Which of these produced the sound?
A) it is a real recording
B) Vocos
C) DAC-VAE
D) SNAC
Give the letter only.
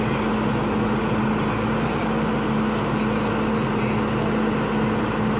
A